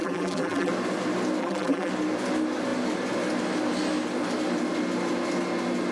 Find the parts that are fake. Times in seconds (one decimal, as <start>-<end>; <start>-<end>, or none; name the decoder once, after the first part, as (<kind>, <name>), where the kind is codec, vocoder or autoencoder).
0.0-0.7 (vocoder, BigVGAN v2); 1.4-1.9